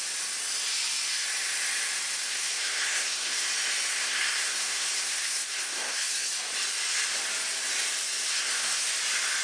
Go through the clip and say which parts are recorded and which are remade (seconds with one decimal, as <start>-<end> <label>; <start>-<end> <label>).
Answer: 0.0-2.3 recorded; 2.3-3.5 remade; 3.5-3.9 recorded; 3.9-6.3 remade; 6.3-8.3 recorded; 8.3-8.9 remade; 8.9-9.4 recorded

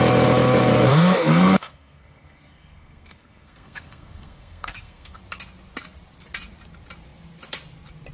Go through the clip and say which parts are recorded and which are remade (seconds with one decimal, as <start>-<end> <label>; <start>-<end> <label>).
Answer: 0.0-0.9 recorded; 0.9-5.2 remade; 5.2-8.1 recorded

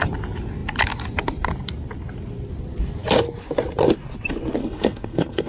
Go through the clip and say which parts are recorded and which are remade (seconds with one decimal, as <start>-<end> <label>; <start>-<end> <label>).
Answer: 0.0-4.6 recorded; 4.6-5.5 remade

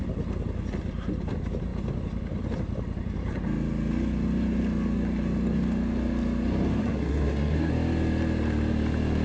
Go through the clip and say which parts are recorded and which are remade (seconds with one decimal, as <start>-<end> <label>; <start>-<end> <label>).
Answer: 0.0-6.8 recorded; 6.8-7.7 remade; 7.7-9.2 recorded

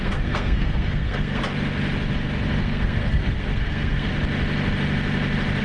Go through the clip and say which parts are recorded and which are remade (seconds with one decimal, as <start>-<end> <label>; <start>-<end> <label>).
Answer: 0.0-1.4 remade; 1.4-2.6 recorded; 2.6-4.1 remade; 4.1-5.6 recorded

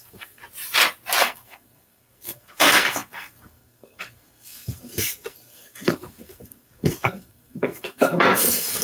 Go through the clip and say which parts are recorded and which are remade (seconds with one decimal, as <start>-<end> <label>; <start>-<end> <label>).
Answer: 0.0-0.4 remade; 0.4-1.2 recorded; 1.2-8.8 remade